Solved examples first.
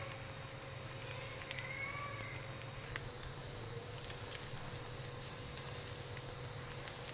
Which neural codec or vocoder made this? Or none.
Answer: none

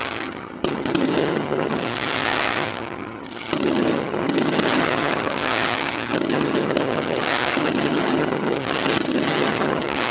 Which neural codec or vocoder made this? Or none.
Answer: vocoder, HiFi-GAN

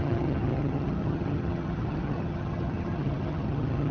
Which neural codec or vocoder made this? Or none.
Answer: vocoder, HiFi-GAN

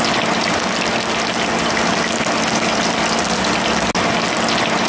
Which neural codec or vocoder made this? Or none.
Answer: none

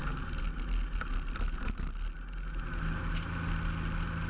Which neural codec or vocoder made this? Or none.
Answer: none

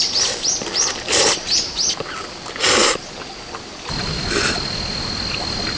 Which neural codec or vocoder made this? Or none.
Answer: none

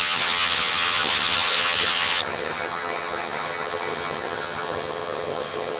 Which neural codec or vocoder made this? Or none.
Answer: vocoder, HiFi-GAN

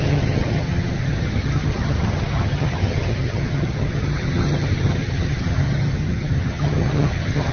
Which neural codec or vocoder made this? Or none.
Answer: vocoder, HiFi-GAN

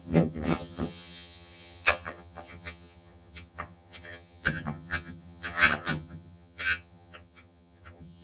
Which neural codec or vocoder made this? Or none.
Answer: vocoder, HiFi-GAN